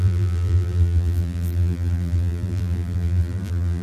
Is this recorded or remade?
remade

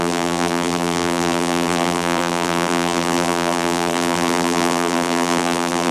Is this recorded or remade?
remade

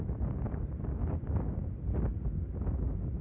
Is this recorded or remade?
recorded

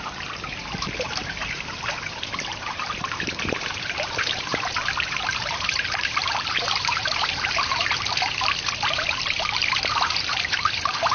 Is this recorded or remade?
remade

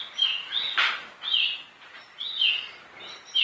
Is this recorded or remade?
recorded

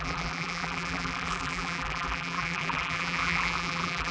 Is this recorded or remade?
remade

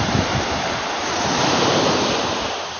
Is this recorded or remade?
remade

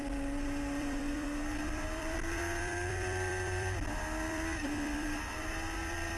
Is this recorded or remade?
remade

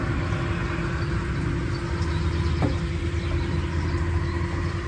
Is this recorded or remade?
recorded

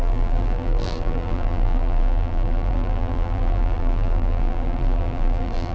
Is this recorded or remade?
remade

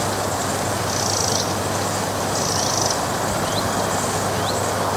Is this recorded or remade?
recorded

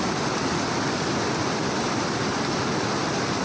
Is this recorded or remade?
recorded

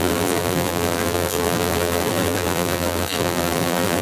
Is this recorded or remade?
remade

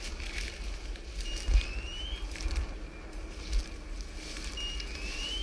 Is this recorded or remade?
recorded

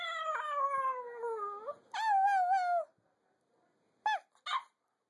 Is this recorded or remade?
recorded